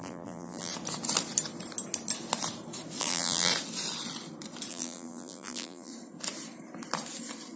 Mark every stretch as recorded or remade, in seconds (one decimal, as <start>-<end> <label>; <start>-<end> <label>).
0.0-0.7 remade; 0.7-3.0 recorded; 3.0-3.5 remade; 3.5-4.7 recorded; 4.7-5.9 remade; 5.9-7.6 recorded